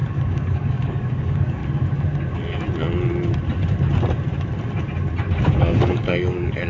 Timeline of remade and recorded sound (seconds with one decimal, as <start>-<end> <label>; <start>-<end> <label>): 0.0-1.6 remade; 1.6-5.6 recorded; 5.6-6.7 remade